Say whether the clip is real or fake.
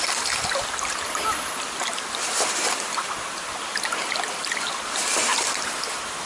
fake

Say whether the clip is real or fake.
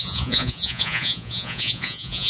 fake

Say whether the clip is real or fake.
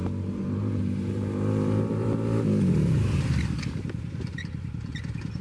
fake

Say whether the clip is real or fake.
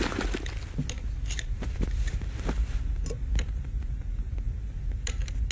real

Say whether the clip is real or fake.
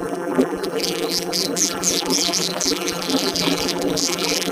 fake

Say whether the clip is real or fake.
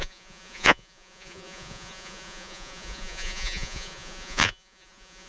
fake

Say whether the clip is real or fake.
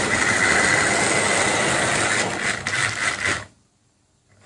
real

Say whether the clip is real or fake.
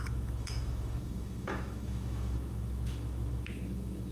fake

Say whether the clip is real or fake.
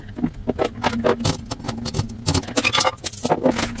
real